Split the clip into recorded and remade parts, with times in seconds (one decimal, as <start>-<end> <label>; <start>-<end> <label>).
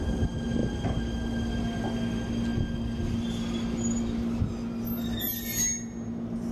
0.0-6.5 recorded